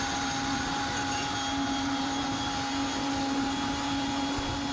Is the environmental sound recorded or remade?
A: recorded